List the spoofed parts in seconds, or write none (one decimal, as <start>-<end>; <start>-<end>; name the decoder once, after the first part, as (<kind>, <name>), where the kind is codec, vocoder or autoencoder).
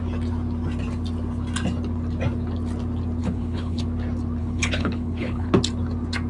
3.2-3.8 (codec, HILCodec); 4.4-5.5